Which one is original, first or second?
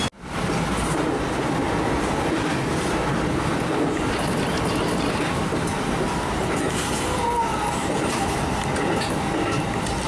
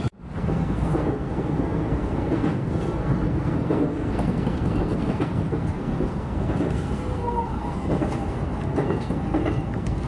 first